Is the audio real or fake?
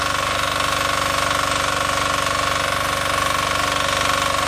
real